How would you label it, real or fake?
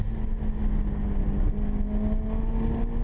real